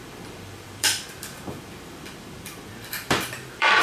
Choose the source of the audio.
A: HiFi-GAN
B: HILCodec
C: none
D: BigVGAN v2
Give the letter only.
D